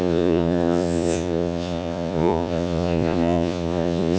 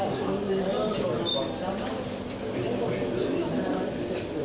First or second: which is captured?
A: second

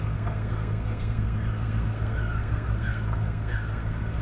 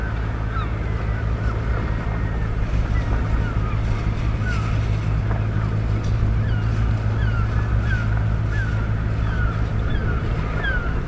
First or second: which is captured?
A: second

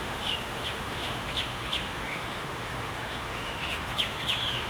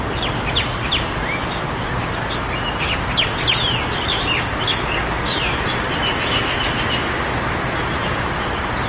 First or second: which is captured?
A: second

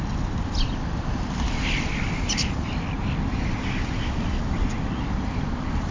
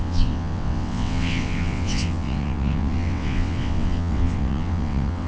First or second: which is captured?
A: first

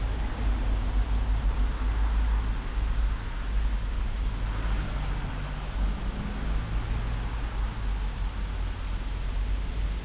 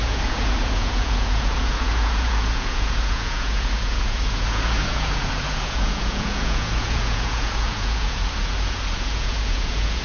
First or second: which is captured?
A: first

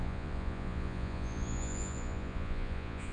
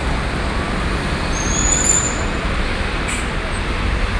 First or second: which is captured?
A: second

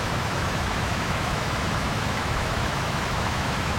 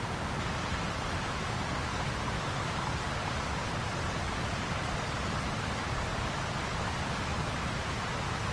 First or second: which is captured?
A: second